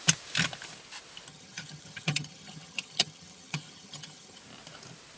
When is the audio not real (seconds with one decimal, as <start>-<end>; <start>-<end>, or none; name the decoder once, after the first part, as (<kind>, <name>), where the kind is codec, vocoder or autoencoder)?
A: 1.3-4.4 (vocoder, HiFi-GAN)